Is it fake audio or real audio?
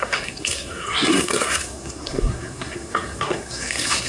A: fake